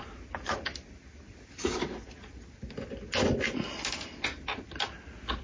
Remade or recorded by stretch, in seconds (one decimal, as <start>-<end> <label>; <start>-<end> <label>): 0.0-5.4 recorded